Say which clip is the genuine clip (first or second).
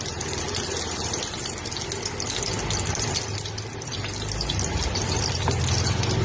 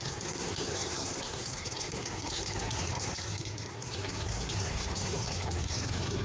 first